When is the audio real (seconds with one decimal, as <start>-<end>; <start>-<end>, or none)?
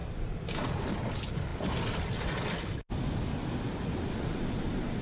0.8-5.0